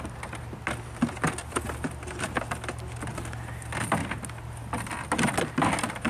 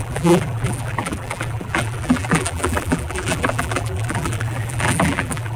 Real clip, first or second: first